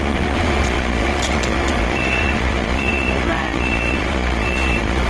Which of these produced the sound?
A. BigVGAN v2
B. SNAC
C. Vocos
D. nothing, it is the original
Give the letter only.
C